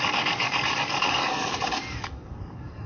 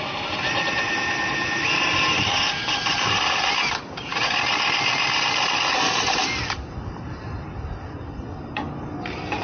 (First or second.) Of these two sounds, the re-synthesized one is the first